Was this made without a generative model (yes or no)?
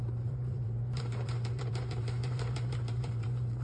no